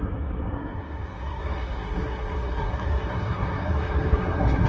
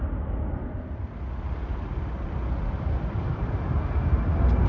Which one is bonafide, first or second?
second